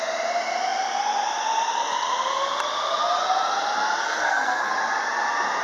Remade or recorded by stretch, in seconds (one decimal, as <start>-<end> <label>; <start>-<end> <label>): 0.0-4.0 recorded; 4.0-4.7 remade; 4.7-5.6 recorded

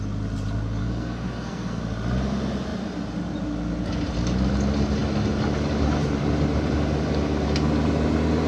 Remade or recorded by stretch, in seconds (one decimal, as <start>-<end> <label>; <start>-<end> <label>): 0.0-0.8 recorded; 0.8-1.8 remade; 1.8-8.5 recorded